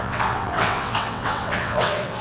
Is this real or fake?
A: fake